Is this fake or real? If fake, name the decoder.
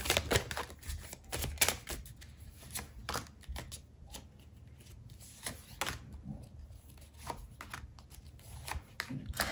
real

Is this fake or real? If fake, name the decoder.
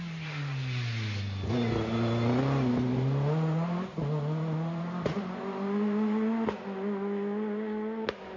real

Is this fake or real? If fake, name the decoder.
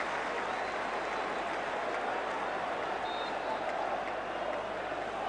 real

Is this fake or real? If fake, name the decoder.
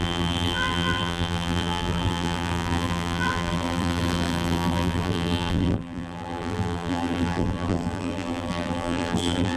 fake, vocoder, BigVGAN v2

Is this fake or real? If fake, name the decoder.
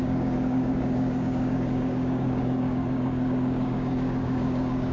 fake, codec, DAC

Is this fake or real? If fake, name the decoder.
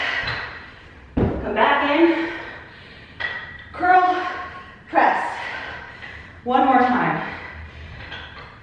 fake, vocoder, BigVGAN v2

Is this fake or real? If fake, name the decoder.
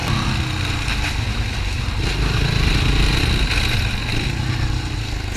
real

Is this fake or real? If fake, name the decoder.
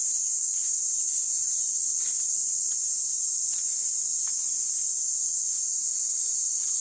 real